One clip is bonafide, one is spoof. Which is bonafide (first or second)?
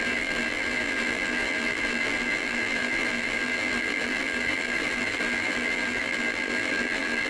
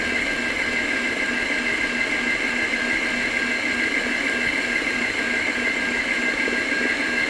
second